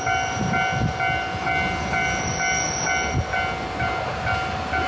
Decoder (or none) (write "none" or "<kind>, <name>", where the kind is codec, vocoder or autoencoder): none